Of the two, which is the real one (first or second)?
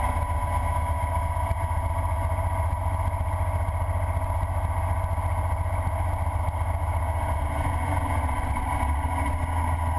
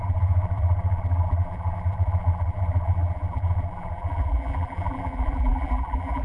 first